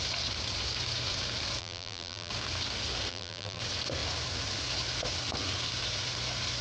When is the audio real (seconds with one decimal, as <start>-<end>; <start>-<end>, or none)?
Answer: 0.0-1.6; 2.3-3.1; 3.6-6.6